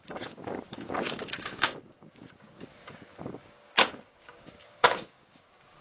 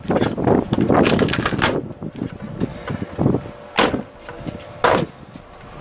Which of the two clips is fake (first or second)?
first